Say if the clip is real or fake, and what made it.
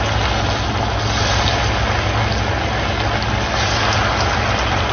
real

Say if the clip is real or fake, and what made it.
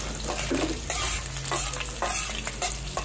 real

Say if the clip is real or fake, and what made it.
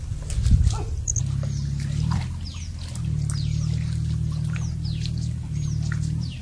real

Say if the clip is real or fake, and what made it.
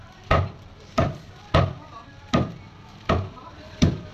fake, vocoder, BigVGAN v2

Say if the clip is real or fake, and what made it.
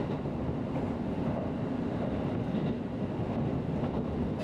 real